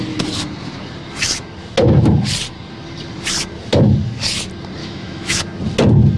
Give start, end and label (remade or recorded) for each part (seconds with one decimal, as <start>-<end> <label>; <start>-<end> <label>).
0.0-4.8 recorded; 4.8-5.4 remade; 5.4-6.2 recorded